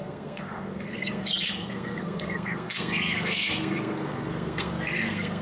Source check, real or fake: fake